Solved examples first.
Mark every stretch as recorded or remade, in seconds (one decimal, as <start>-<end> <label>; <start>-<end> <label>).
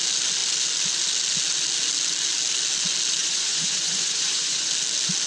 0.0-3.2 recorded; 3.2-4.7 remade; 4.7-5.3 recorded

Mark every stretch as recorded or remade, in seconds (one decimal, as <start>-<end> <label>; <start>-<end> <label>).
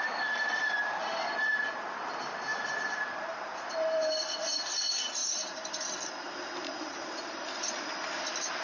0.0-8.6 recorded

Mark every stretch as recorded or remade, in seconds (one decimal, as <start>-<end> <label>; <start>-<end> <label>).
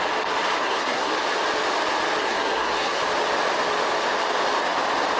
0.0-0.6 recorded; 0.6-1.1 remade; 1.1-2.2 recorded; 2.2-3.0 remade; 3.0-5.2 recorded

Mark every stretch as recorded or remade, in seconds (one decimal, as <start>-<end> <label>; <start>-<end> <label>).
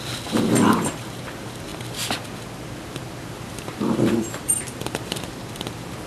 0.0-6.1 remade